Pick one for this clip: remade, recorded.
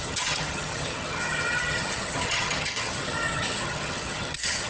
remade